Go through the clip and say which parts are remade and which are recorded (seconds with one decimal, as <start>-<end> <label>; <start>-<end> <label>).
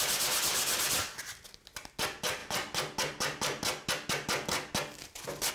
0.0-5.5 recorded